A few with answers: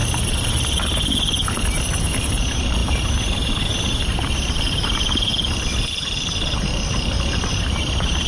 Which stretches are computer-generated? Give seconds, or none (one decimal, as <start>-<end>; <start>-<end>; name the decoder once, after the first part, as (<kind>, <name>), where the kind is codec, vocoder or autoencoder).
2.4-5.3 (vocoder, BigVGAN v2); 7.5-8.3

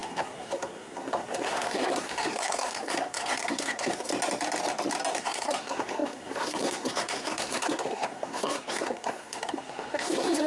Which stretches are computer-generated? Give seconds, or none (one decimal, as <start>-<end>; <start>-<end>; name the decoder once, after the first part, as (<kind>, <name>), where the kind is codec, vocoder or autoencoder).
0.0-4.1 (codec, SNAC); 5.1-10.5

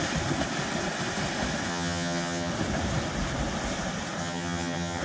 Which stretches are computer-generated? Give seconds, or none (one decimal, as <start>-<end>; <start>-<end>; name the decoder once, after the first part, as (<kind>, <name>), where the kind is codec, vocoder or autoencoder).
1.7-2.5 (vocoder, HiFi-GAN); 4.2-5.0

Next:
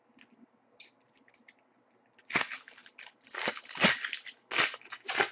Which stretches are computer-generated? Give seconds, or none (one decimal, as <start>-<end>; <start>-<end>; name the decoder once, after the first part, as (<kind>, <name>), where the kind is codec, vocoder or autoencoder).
none

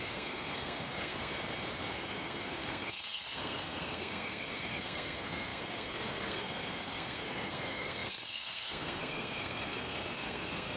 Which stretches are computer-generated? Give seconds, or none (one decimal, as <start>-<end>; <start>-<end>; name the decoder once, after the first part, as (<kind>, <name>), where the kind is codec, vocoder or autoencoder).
0.0-1.3 (codec, SNAC); 1.9-10.8

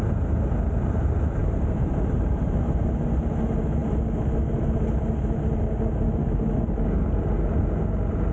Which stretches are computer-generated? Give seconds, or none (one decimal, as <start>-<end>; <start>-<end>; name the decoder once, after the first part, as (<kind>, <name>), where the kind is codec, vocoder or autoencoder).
none

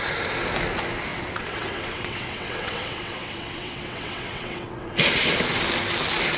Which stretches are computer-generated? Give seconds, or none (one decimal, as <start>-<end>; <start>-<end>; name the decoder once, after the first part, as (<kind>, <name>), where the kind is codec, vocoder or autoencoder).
1.1-4.9 (vocoder, WaveNeXt)